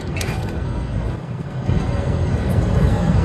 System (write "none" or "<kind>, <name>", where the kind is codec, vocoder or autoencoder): codec, SNAC